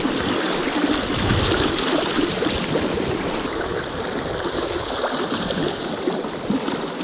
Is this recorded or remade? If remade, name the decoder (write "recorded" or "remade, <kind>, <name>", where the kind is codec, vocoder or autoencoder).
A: recorded